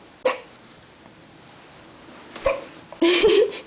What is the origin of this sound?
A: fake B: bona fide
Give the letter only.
B